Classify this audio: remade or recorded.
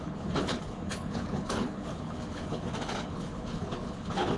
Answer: remade